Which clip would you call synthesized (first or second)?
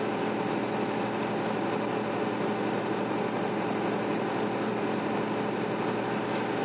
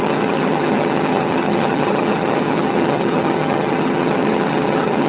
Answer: second